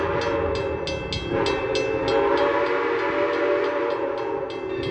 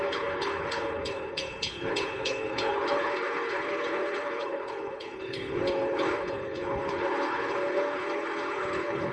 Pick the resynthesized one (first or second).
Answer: second